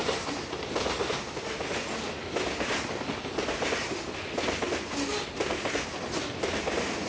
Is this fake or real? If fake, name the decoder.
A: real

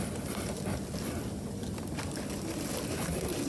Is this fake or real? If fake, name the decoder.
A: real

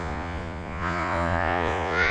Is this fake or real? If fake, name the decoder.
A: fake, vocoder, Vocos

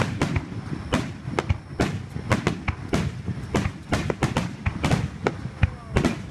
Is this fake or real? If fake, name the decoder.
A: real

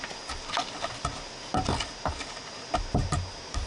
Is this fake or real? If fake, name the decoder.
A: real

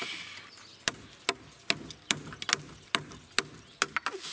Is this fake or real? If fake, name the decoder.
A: real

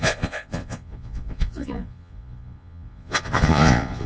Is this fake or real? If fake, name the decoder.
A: fake, vocoder, Vocos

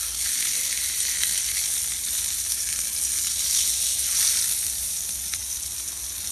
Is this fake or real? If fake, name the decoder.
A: real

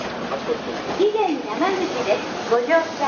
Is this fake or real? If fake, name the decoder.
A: real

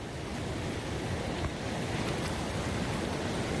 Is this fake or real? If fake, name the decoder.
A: real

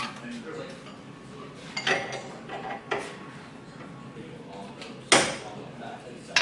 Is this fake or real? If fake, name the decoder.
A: real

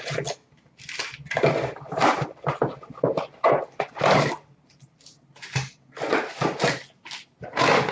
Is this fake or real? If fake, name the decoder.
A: real